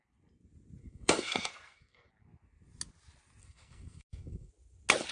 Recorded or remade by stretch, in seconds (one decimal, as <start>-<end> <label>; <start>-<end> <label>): 0.0-0.8 recorded; 0.8-2.1 remade; 2.1-3.4 recorded; 3.4-4.5 remade; 4.5-5.1 recorded